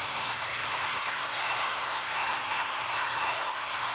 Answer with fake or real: fake